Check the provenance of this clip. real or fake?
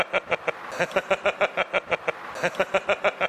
real